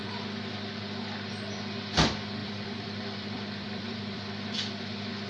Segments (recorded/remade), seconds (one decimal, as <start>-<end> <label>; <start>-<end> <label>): 0.0-2.4 recorded; 2.4-4.2 remade; 4.2-5.3 recorded